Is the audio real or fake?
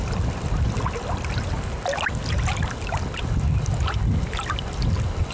real